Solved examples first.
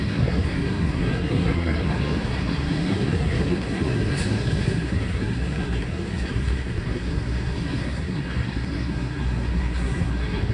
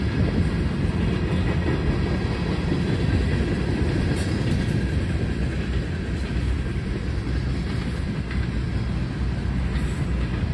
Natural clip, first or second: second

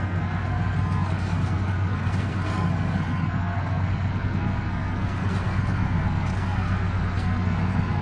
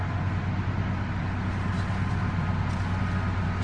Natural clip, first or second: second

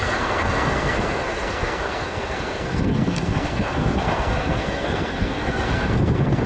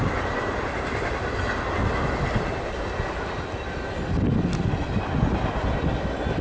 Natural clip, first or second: second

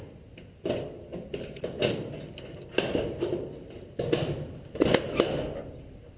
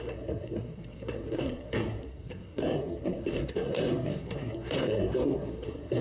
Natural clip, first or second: first